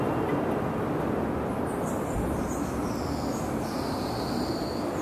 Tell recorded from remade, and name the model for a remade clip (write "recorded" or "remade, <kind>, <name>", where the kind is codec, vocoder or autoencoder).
recorded